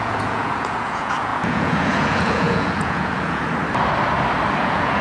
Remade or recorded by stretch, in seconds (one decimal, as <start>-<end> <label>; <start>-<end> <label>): 0.0-3.4 remade; 3.4-4.6 recorded; 4.6-5.0 remade